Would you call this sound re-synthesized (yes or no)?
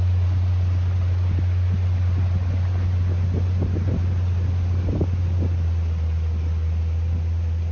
no